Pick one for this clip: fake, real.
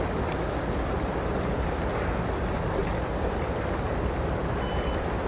real